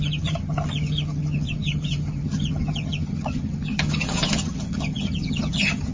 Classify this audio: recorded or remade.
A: remade